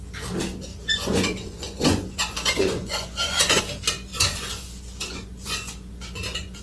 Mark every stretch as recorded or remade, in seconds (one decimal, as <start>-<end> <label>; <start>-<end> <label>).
0.0-0.7 recorded; 0.7-3.6 remade; 3.6-4.1 recorded; 4.1-6.6 remade